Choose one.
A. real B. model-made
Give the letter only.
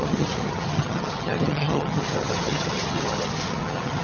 B